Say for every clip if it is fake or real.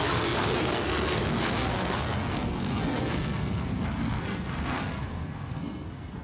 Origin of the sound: fake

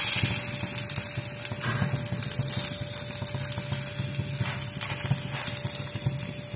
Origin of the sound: real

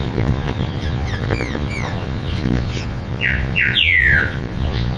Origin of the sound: fake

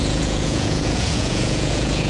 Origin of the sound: fake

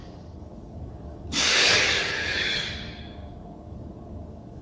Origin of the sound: fake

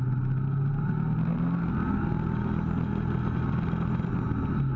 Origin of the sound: real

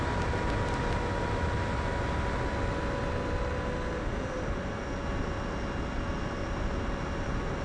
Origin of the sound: real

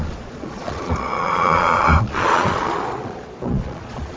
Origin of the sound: fake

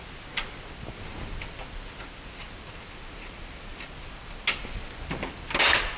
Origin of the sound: real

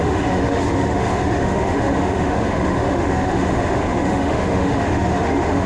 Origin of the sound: fake